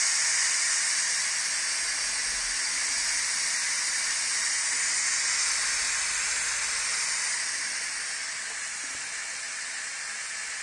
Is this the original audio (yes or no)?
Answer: yes